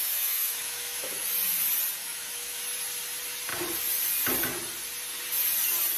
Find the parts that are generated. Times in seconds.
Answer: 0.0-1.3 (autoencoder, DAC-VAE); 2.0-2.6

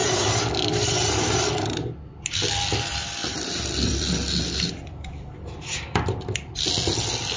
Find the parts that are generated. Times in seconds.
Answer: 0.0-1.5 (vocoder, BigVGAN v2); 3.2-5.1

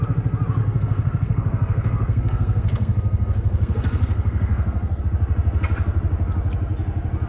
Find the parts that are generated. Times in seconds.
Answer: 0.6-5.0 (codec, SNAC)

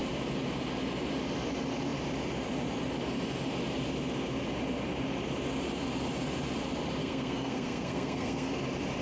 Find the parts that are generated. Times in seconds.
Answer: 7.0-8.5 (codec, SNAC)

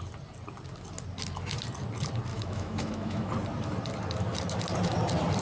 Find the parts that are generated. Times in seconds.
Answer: 2.3-3.3 (autoencoder, DAC-VAE)

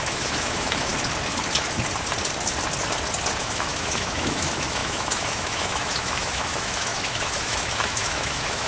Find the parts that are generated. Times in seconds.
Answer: 0.0-0.9 (autoencoder, DAC-VAE); 3.4-8.7

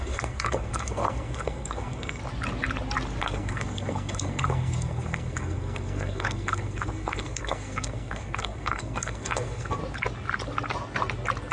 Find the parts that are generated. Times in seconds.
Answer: 0.0-2.2 (codec, SNAC); 3.2-9.8

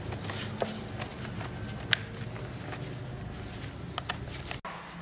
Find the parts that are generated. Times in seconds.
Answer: none